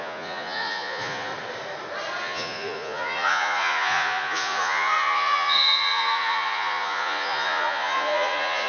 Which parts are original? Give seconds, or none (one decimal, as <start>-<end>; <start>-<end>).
1.3-2.2